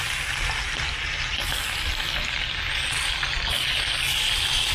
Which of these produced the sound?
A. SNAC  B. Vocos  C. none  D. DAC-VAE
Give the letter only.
C